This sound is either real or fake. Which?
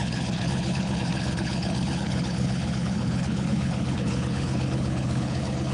fake